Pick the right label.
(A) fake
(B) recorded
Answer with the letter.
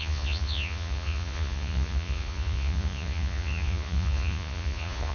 A